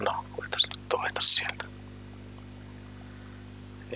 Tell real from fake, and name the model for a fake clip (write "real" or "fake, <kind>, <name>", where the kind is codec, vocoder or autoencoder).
real